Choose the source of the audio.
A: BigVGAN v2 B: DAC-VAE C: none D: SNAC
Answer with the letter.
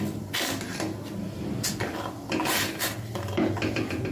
C